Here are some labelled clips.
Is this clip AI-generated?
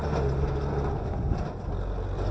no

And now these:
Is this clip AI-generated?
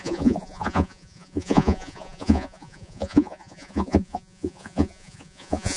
yes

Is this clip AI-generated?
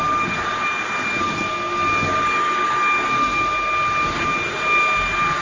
no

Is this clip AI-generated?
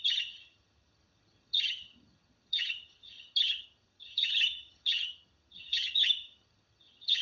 yes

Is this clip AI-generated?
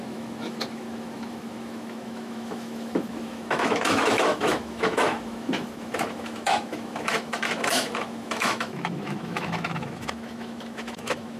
yes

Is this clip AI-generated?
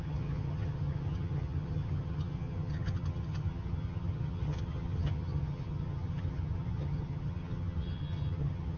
yes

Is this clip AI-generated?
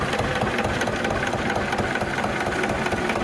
no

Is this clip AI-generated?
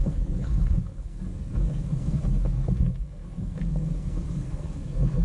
yes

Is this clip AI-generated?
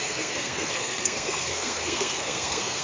yes